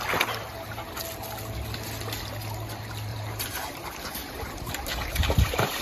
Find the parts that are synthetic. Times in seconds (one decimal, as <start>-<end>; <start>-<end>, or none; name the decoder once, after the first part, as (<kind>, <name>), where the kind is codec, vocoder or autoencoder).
3.1-5.8 (vocoder, BigVGAN v2)